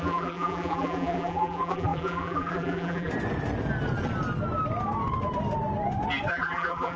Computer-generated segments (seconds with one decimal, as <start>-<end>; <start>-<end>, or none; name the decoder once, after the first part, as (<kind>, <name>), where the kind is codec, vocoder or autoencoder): 0.0-3.1 (vocoder, BigVGAN v2); 6.3-7.0